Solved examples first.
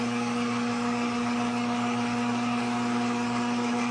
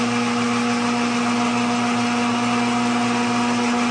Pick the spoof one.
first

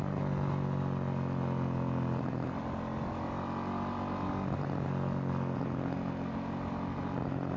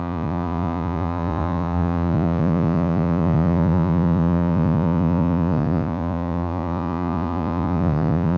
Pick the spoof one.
second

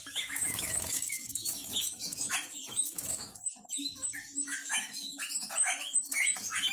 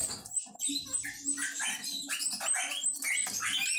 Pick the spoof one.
first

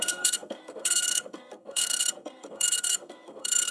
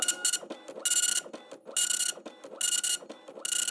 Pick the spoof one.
first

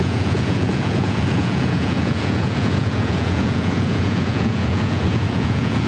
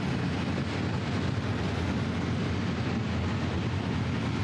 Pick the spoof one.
first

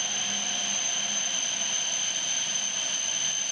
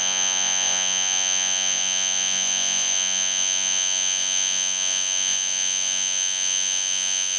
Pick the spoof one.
second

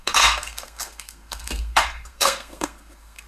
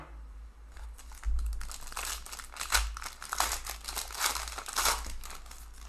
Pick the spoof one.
first